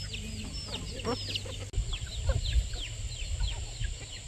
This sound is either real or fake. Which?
real